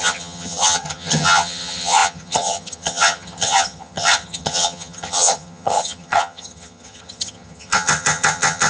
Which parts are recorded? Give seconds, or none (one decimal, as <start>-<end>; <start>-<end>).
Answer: none